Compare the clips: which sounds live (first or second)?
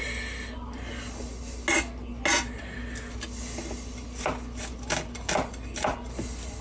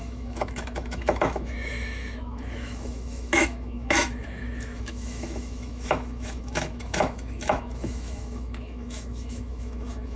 first